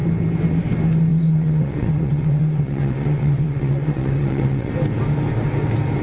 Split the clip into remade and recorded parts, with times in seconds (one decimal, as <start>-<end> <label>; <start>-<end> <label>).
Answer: 0.0-1.1 recorded; 1.1-4.7 remade; 4.7-6.0 recorded